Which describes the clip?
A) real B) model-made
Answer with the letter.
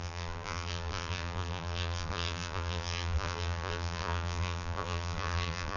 B